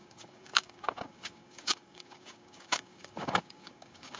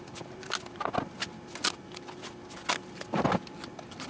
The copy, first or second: first